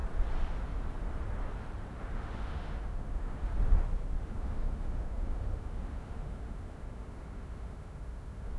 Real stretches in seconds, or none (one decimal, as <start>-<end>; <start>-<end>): 0.0-2.0; 3.5-4.2